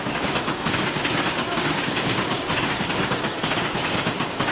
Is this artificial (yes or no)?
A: yes